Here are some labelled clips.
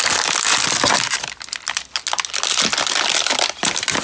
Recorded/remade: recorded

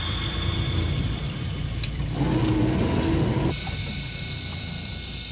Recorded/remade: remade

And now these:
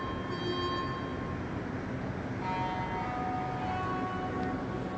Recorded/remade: recorded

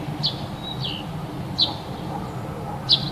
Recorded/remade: recorded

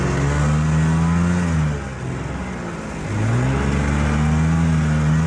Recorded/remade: recorded